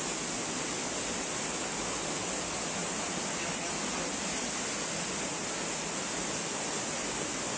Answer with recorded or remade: recorded